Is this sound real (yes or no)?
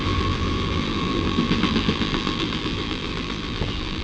no